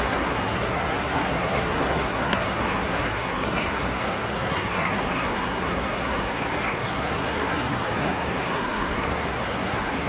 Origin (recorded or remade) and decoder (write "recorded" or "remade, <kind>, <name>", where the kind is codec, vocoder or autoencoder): remade, codec, SNAC